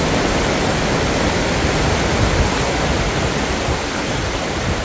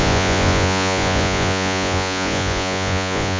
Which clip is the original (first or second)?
first